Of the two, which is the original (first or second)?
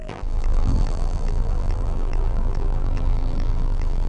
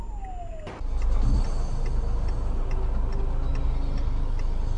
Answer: second